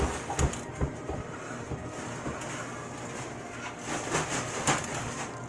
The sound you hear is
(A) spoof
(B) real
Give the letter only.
B